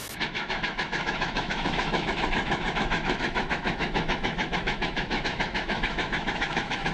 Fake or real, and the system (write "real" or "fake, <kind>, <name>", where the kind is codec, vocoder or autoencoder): fake, autoencoder, DAC-VAE